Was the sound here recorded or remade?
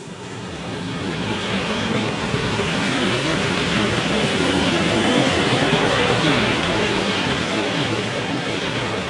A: remade